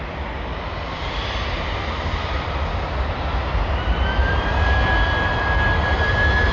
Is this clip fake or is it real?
fake